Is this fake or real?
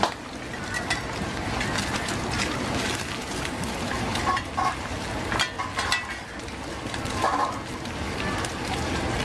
real